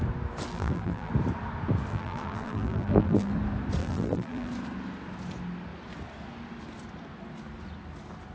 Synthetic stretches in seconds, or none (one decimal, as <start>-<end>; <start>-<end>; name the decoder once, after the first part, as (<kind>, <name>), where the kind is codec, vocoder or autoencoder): 0.5-1.1 (vocoder, BigVGAN v2); 1.9-3.3; 3.8-4.5